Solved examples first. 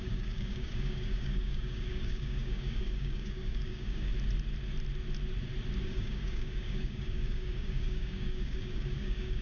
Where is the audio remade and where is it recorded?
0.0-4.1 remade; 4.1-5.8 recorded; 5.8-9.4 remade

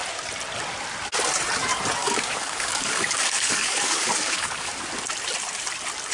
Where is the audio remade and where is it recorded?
0.0-2.0 recorded; 2.0-4.7 remade; 4.7-6.1 recorded

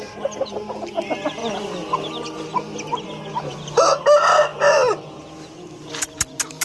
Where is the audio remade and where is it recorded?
0.0-6.6 recorded

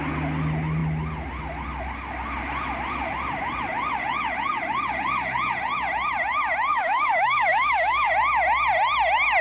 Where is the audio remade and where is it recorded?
0.0-6.7 recorded; 6.7-8.1 remade; 8.1-9.4 recorded

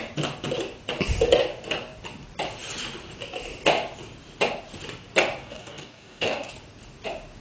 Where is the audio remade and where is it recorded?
0.0-5.4 recorded; 5.4-6.5 remade; 6.5-7.4 recorded

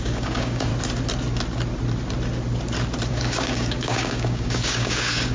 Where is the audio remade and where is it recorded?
0.0-0.7 remade; 0.7-3.1 recorded; 3.1-5.3 remade